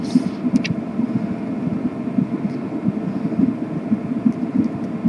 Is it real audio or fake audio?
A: real